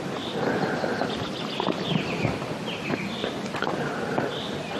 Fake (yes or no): no